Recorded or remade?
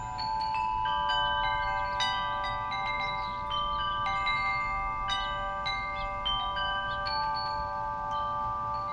recorded